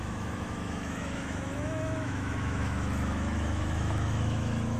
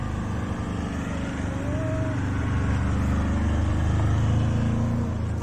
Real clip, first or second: second